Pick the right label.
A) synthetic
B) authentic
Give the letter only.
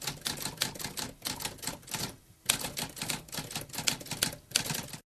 B